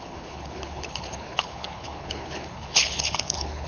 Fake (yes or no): yes